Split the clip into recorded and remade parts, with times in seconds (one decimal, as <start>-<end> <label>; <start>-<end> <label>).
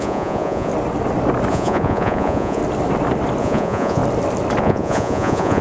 0.0-0.7 remade; 0.7-1.5 recorded; 1.5-2.6 remade; 2.6-3.4 recorded; 3.4-4.0 remade; 4.0-4.6 recorded; 4.6-5.6 remade